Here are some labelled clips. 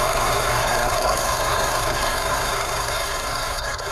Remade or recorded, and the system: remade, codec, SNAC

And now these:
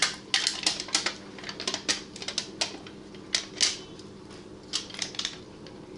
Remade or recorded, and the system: recorded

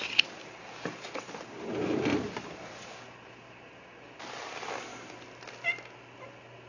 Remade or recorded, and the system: recorded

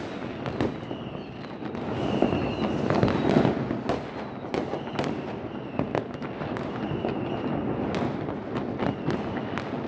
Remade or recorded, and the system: recorded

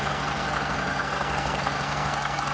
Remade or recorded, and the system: remade, codec, SNAC